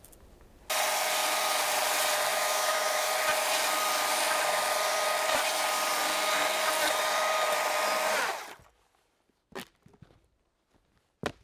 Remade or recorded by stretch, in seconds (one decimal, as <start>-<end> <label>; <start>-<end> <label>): 0.0-2.3 recorded; 2.3-3.1 remade; 3.1-11.4 recorded